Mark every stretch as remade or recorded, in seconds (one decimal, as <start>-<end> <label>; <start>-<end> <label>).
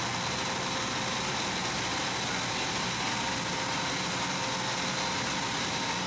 0.0-6.1 recorded